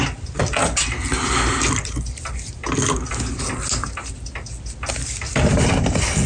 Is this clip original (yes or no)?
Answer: yes